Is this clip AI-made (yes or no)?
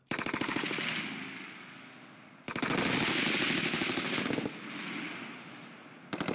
no